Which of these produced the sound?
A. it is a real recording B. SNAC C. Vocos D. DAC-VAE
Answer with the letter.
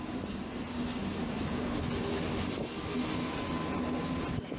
A